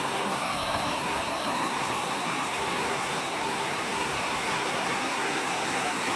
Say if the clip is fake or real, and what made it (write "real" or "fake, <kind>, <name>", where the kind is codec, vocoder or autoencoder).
fake, codec, SNAC